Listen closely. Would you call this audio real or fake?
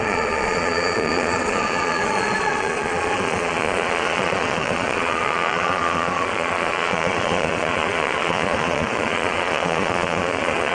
fake